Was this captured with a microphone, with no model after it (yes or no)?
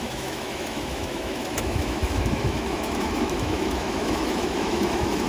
no